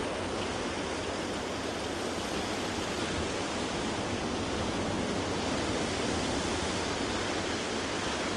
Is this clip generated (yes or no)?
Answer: no